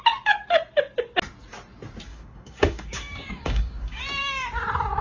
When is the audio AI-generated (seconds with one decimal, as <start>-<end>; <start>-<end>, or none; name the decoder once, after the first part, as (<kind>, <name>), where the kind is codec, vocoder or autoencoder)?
2.1-4.0 (codec, DAC)